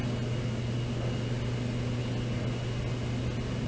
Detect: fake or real real